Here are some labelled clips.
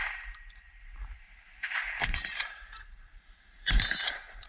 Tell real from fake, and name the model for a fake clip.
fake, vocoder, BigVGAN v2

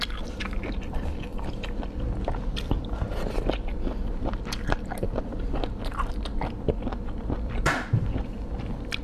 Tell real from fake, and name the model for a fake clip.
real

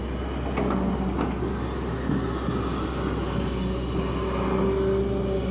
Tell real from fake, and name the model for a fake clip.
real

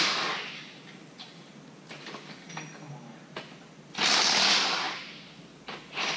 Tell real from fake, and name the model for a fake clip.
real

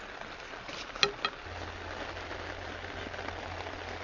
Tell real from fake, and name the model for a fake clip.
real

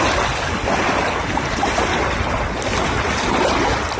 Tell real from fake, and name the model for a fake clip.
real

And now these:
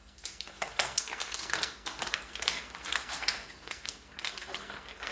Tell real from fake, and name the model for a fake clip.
fake, codec, SNAC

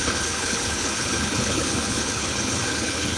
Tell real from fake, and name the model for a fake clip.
fake, codec, HILCodec